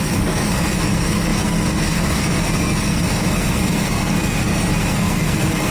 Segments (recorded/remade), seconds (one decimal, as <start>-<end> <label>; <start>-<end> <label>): 0.0-5.7 remade